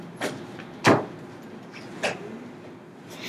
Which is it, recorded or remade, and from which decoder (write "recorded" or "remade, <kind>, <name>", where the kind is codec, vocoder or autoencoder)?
recorded